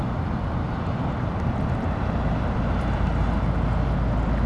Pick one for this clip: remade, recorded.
recorded